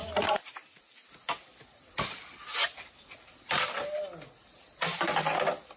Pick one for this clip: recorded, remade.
recorded